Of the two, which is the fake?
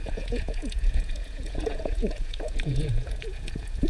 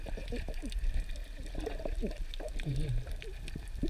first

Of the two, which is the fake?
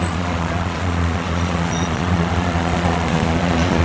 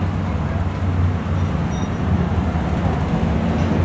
first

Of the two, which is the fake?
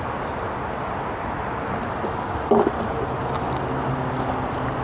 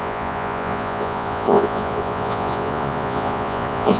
second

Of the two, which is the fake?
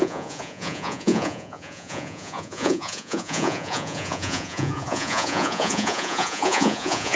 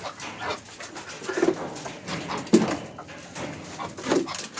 first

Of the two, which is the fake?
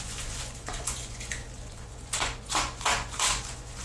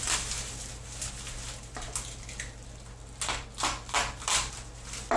first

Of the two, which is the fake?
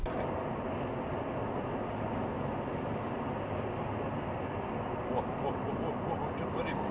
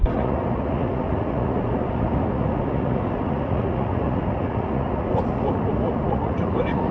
second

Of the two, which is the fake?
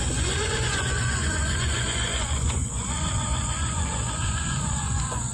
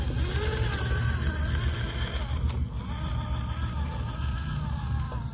first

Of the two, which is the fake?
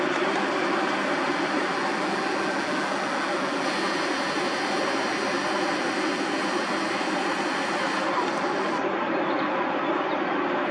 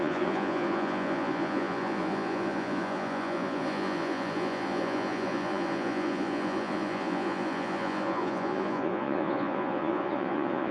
second